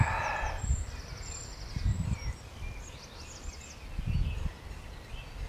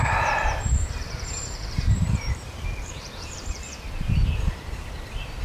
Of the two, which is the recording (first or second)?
first